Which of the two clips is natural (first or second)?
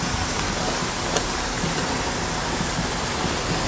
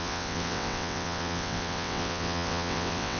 first